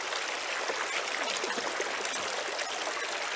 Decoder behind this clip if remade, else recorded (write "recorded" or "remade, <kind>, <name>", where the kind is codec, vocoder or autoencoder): recorded